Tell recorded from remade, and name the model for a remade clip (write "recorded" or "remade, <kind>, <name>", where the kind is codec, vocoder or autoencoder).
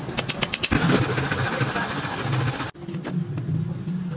recorded